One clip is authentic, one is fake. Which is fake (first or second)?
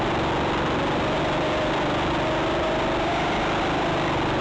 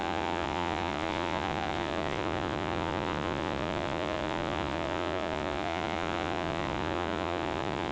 second